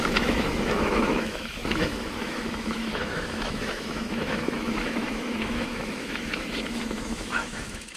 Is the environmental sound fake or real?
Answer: fake